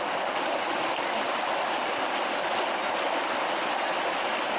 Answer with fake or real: real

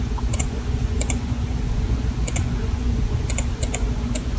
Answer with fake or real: fake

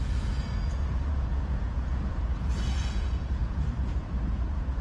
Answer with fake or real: fake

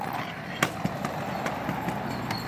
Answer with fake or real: real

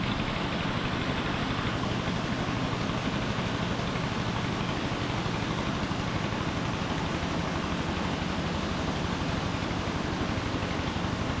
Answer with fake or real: real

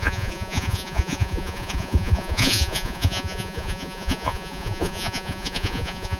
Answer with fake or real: fake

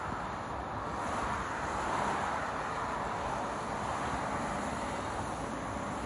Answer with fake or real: real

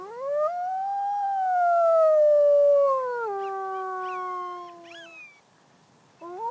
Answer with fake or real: real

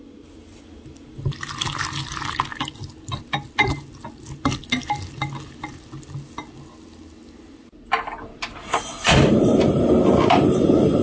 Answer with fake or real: real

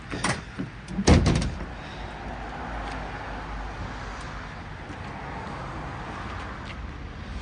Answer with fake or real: real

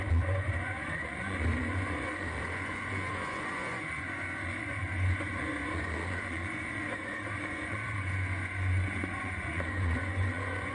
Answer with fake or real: fake